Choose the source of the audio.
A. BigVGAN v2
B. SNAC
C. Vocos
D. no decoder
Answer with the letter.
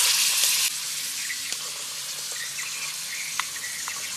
D